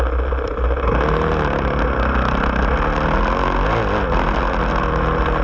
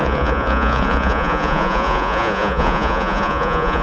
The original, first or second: first